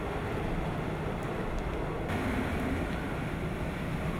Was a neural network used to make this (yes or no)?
no